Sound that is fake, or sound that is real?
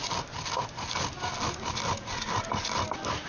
real